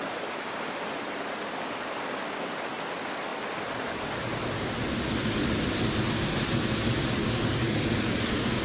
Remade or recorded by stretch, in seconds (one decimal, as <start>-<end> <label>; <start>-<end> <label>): 0.0-8.6 recorded